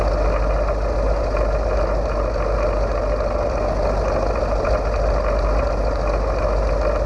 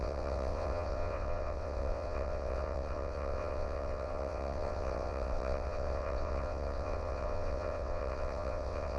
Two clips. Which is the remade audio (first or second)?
second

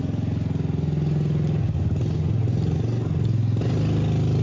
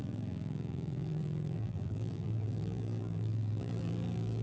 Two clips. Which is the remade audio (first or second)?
second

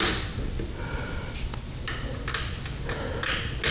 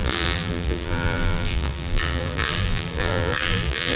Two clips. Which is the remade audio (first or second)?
second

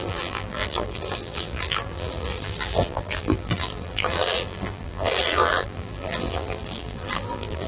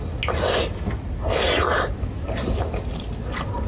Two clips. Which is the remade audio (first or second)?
first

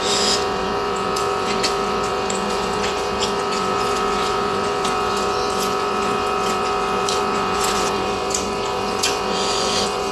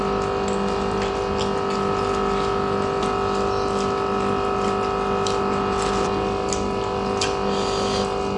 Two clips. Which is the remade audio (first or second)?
first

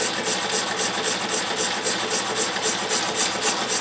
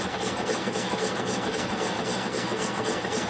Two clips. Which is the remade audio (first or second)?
second